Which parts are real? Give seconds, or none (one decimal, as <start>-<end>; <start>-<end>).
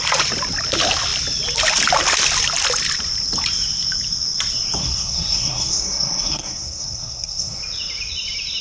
0.0-4.8; 7.6-8.6